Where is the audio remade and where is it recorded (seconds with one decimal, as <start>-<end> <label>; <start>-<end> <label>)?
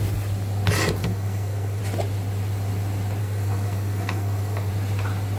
0.0-1.0 recorded; 1.0-1.8 remade; 1.8-3.2 recorded; 3.2-4.7 remade; 4.7-5.4 recorded